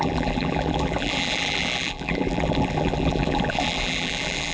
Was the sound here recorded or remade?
remade